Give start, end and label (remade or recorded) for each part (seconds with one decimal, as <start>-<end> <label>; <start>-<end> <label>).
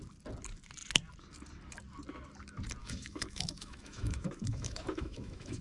0.0-2.8 recorded; 2.8-5.6 remade